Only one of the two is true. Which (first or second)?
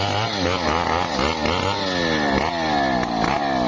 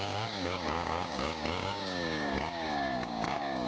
first